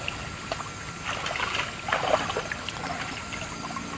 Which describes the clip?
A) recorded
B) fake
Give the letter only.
A